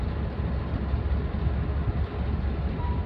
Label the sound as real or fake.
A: real